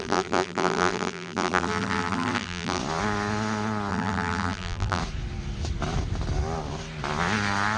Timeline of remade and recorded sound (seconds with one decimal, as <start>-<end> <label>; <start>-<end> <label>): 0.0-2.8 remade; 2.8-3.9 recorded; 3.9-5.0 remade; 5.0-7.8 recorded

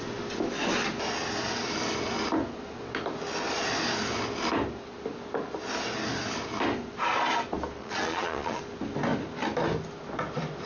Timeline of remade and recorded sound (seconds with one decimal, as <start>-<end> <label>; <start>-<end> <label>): 0.0-7.8 recorded; 7.8-8.6 remade; 8.6-10.7 recorded

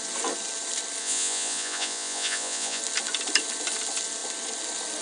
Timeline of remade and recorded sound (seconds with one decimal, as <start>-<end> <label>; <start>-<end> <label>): 0.0-1.0 recorded; 1.0-2.8 remade; 2.8-5.0 recorded

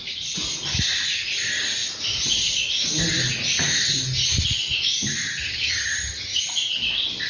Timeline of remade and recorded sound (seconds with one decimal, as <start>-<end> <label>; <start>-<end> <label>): 0.0-5.4 recorded; 5.4-6.4 remade; 6.4-7.3 recorded

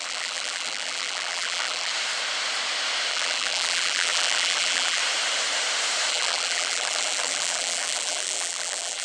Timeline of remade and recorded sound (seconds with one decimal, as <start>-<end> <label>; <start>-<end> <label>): 0.0-1.9 remade; 1.9-3.1 recorded; 3.1-5.0 remade; 5.0-6.1 recorded; 6.1-9.0 remade

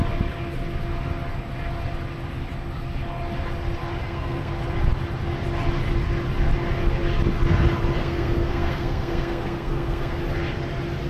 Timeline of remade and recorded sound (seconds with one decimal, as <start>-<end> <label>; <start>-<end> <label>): 0.0-4.0 recorded; 4.0-4.5 remade; 4.5-8.0 recorded; 8.0-10.2 remade; 10.2-11.1 recorded